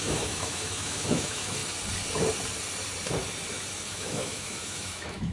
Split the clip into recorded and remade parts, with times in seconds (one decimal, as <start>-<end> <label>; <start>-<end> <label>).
0.0-1.6 remade; 1.6-3.9 recorded; 3.9-5.3 remade